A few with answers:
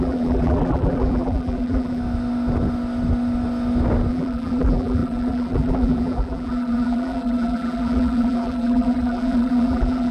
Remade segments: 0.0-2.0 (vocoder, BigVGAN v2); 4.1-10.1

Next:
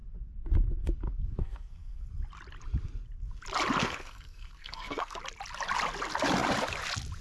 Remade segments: 1.4-2.1 (codec, SNAC); 3.8-5.2

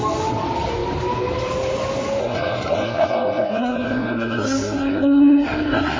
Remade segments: 2.2-6.0 (codec, SNAC)